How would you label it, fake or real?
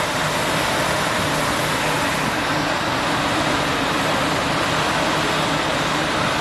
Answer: real